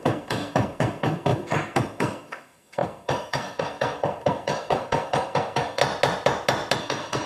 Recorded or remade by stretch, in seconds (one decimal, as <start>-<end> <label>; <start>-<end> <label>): 0.0-5.8 remade; 5.8-6.8 recorded; 6.8-7.3 remade

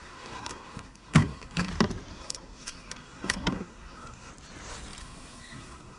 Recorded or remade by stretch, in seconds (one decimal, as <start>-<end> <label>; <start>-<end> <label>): 0.0-1.7 remade; 1.7-2.1 recorded; 2.1-4.3 remade; 4.3-5.0 recorded; 5.0-6.0 remade

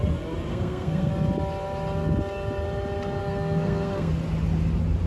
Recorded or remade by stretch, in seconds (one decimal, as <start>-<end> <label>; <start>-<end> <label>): 0.0-0.5 recorded; 0.5-1.1 remade; 1.1-3.2 recorded; 3.2-4.1 remade; 4.1-5.1 recorded

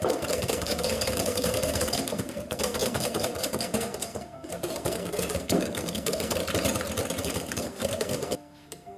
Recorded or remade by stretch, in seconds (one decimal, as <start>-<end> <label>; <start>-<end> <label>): 0.0-6.4 remade; 6.4-7.2 recorded; 7.2-9.0 remade

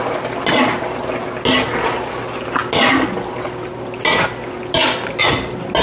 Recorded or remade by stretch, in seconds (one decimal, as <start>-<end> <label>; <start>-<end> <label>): 0.0-5.8 recorded